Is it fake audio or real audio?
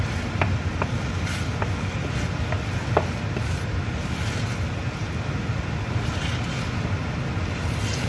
real